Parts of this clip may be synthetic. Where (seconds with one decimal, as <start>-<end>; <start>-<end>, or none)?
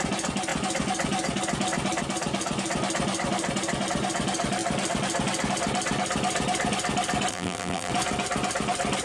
7.3-7.9